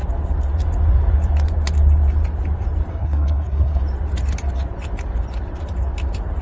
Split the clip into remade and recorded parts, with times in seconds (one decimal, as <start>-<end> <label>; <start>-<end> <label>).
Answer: 0.0-2.9 recorded; 2.9-3.8 remade; 3.8-6.4 recorded